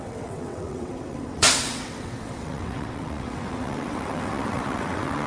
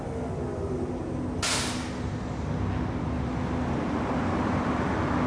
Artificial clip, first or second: first